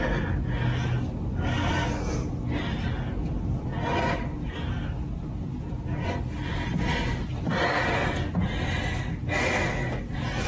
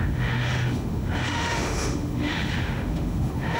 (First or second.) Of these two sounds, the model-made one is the second